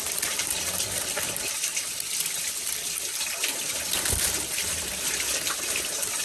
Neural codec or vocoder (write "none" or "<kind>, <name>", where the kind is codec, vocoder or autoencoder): vocoder, BigVGAN v2